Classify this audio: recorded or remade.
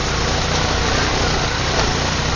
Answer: recorded